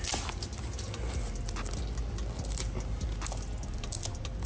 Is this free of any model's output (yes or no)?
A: yes